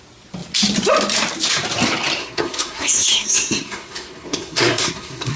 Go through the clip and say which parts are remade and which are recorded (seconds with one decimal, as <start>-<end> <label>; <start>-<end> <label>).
0.0-2.2 recorded; 2.2-5.4 remade